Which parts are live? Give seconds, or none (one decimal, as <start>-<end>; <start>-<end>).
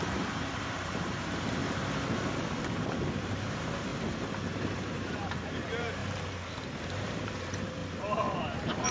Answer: 1.6-3.1; 3.9-4.5; 6.0-7.2; 7.8-8.4